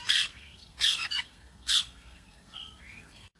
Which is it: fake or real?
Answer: fake